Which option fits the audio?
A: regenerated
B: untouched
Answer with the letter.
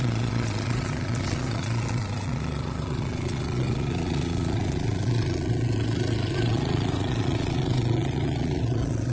A